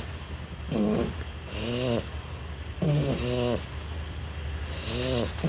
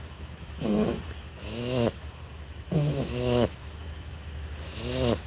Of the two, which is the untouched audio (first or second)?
first